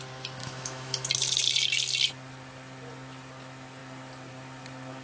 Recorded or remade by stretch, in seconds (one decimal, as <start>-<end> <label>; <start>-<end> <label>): 0.0-0.4 recorded; 0.4-1.1 remade; 1.1-5.0 recorded